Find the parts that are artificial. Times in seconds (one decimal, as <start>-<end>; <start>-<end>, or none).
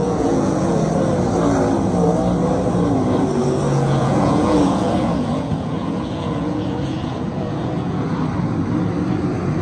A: 0.0-0.8; 3.7-8.2